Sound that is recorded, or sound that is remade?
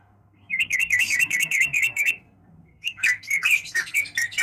remade